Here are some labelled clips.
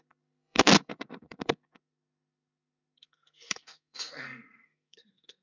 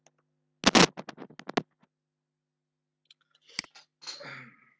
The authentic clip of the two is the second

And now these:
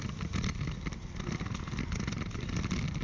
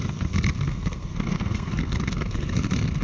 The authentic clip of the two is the first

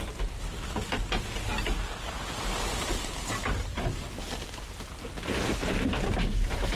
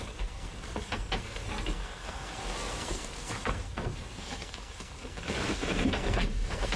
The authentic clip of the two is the first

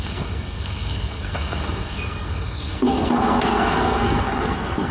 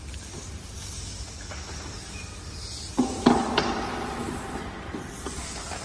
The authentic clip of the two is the second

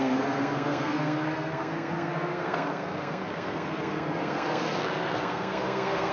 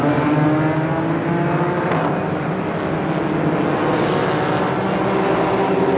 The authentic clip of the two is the second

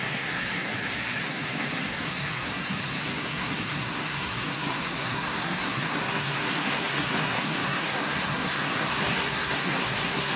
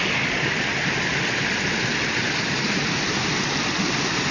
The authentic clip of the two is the second